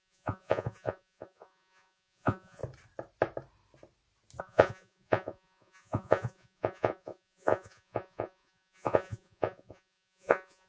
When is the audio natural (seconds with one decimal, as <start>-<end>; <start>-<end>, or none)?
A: 2.6-4.4